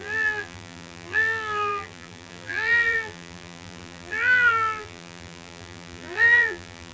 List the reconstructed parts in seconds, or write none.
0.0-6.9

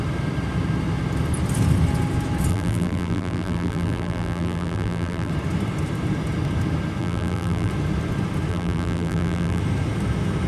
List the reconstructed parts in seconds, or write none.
2.5-5.3; 7.0-7.7; 8.5-9.6

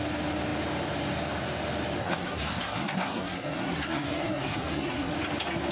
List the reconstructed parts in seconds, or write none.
2.0-5.1

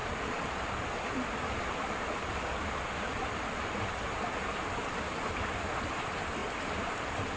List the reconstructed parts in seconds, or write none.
none

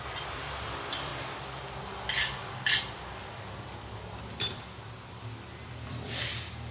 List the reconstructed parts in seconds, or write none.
0.0-1.1; 4.2-6.7

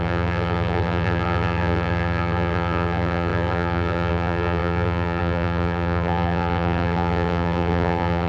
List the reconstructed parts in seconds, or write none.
0.0-8.3